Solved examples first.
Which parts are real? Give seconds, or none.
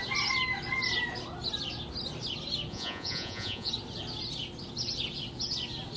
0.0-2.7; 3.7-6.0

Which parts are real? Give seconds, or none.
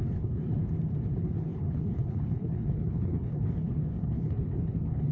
0.6-1.1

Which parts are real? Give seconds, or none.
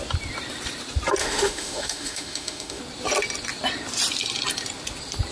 0.0-1.2; 2.8-5.3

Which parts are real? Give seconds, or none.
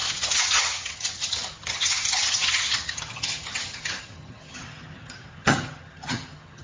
none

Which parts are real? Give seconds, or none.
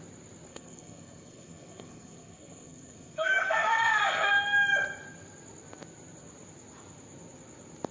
0.0-0.5; 4.3-7.9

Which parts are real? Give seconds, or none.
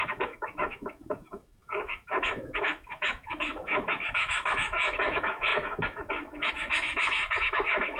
none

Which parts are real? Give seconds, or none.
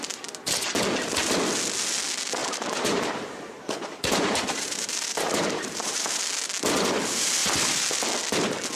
0.0-2.4; 6.2-8.8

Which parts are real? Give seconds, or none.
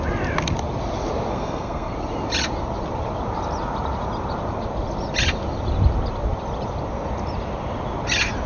0.0-1.3; 1.9-8.5